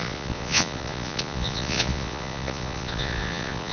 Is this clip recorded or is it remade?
remade